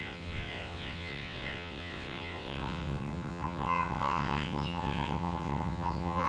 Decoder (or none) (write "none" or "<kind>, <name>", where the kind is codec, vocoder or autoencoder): vocoder, WaveNeXt